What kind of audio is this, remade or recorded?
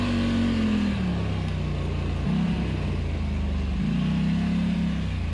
recorded